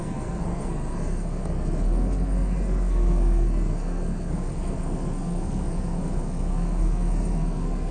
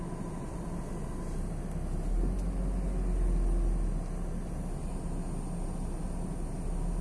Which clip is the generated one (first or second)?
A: first